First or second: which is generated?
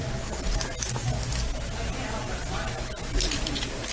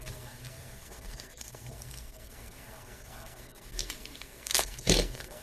second